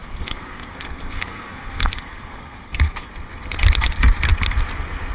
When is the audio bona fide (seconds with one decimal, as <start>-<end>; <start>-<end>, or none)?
3.1-5.1